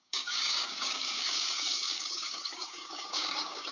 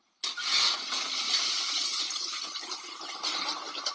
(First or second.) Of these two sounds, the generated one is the first